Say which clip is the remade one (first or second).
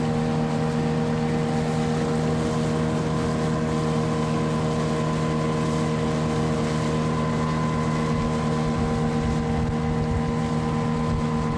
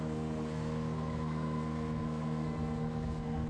second